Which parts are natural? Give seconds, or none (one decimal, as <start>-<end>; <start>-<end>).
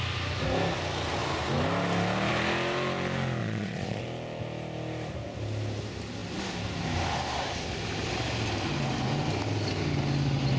0.0-3.4; 4.0-10.6